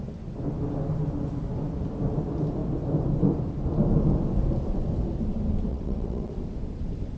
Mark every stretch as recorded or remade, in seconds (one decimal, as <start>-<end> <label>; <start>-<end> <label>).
0.0-5.7 recorded; 5.7-6.3 remade; 6.3-7.2 recorded